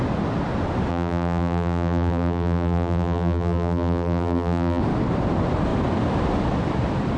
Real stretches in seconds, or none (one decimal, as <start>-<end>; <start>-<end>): 0.0-0.9; 4.8-7.2